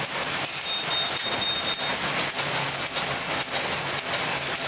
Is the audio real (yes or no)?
yes